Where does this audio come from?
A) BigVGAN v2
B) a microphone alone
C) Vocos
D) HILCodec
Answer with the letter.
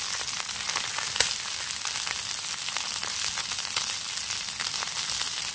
B